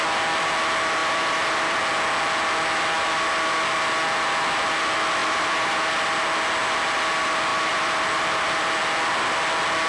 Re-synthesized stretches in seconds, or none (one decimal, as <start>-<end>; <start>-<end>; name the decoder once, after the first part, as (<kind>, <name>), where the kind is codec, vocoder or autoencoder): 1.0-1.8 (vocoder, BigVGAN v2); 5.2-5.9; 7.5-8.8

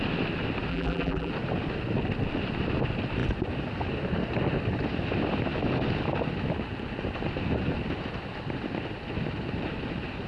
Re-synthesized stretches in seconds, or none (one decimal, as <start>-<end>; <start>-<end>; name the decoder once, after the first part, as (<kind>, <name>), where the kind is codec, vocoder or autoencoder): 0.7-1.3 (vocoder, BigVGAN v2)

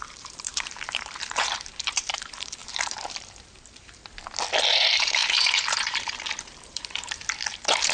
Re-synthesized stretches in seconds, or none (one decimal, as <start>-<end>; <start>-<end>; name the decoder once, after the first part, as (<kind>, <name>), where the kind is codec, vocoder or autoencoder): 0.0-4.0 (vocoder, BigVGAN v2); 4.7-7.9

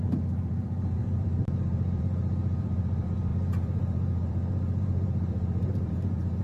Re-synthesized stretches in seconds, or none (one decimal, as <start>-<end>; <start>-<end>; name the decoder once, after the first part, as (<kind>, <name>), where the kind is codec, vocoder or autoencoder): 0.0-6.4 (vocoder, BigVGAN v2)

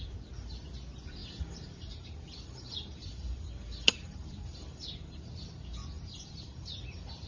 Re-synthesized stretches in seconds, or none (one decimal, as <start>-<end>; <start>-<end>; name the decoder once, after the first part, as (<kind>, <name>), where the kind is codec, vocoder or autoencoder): 1.2-5.3 (vocoder, BigVGAN v2); 5.8-6.8

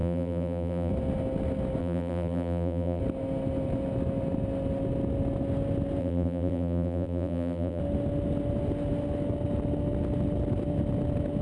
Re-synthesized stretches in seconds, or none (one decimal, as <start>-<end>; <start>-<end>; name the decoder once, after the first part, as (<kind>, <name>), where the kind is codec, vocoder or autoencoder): 0.0-0.9 (vocoder, BigVGAN v2); 1.8-3.0; 6.0-7.8